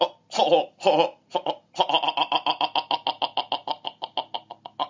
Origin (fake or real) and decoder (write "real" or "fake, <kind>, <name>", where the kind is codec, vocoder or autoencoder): real